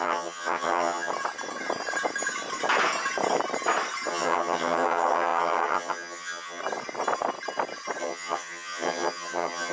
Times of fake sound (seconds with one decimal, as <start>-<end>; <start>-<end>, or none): 0.0-1.1; 4.1-6.6; 8.0-9.7